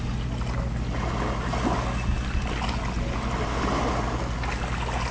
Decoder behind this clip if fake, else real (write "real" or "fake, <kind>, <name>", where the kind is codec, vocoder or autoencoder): real